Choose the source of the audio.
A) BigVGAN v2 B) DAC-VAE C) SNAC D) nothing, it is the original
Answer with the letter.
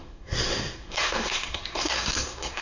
C